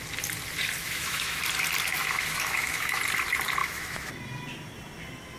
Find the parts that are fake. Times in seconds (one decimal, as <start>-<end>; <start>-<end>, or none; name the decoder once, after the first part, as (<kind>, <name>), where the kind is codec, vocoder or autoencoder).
0.8-1.4 (autoencoder, DAC-VAE); 2.0-3.0; 3.6-4.1